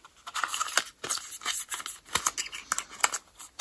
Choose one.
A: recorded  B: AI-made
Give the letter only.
A